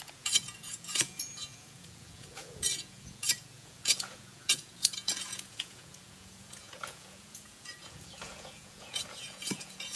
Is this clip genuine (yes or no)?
no